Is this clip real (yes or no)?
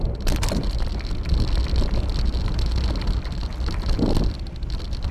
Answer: yes